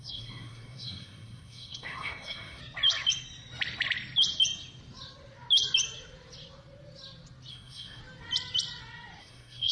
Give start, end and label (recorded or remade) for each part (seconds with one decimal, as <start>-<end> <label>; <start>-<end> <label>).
0.0-2.6 remade; 2.6-7.5 recorded; 7.5-8.0 remade; 8.0-9.2 recorded; 9.2-9.7 remade